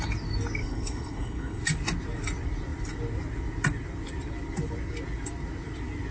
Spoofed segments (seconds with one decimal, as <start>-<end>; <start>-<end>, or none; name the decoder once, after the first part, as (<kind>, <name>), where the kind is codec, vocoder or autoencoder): 0.6-1.6 (codec, HILCodec)